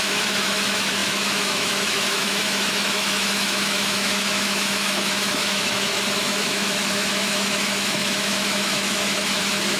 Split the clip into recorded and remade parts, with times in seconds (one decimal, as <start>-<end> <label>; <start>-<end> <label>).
0.0-9.8 remade